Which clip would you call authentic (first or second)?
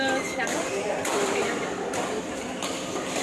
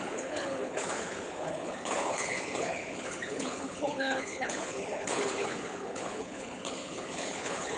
first